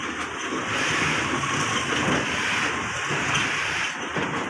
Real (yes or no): yes